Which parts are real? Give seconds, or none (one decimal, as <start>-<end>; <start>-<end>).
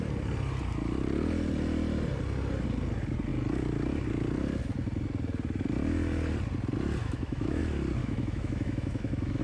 0.0-7.0; 7.6-8.0